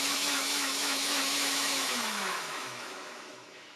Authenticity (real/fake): fake